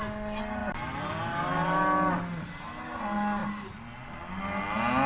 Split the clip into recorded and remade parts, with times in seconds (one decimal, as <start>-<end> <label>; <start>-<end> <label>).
0.0-0.6 recorded; 0.6-1.2 remade; 1.2-5.1 recorded